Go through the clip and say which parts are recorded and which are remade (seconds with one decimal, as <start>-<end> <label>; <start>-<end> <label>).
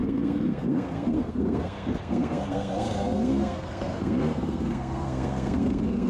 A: 0.0-6.1 remade